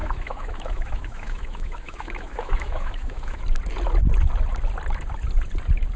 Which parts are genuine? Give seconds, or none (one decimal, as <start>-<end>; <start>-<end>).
3.4-6.0